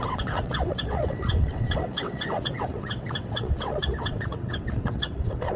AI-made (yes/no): yes